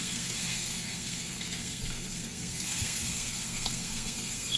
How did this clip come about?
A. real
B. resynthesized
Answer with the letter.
B